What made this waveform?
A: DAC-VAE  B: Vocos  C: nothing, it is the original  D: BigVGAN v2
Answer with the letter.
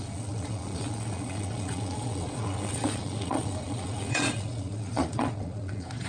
B